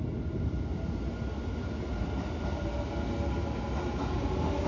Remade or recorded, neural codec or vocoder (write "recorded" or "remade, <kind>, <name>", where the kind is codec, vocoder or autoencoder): recorded